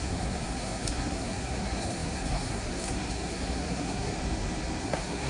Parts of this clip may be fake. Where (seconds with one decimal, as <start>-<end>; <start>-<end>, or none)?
0.0-4.1; 4.8-5.3